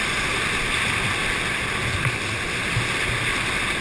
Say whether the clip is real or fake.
real